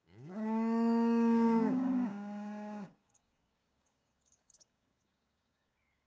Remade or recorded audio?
remade